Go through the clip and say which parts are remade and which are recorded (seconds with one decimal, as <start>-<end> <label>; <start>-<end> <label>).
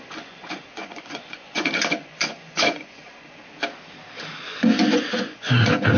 0.0-3.4 remade; 3.4-4.4 recorded; 4.4-6.0 remade